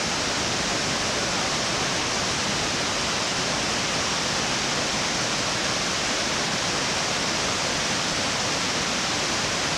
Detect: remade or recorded recorded